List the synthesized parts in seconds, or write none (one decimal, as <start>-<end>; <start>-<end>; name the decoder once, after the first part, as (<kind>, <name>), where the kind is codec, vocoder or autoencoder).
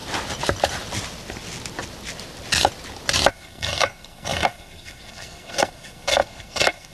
3.3-6.9 (codec, SNAC)